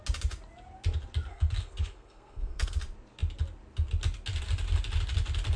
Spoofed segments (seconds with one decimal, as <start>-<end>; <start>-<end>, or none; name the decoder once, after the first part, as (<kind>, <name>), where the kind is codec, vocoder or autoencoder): 1.3-2.8 (codec, SNAC)